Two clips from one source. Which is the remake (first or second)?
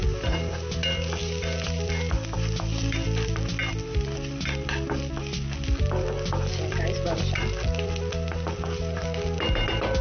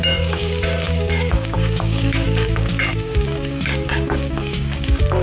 second